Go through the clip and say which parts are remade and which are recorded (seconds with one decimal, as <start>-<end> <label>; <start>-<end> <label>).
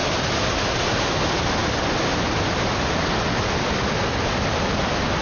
0.0-5.2 recorded